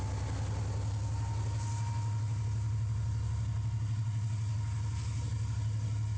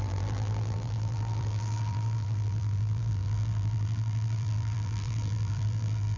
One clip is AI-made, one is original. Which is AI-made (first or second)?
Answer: second